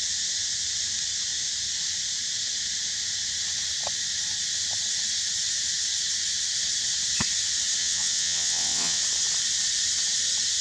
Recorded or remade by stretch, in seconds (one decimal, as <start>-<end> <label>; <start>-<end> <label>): 0.0-7.8 recorded; 7.8-9.0 remade; 9.0-10.6 recorded